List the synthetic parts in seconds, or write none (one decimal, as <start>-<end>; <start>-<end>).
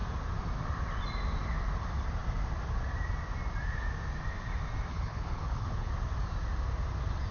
4.9-5.9